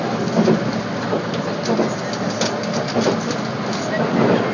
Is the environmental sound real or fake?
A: real